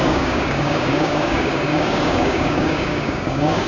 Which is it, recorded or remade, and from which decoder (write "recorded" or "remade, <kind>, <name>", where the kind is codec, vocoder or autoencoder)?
remade, codec, DAC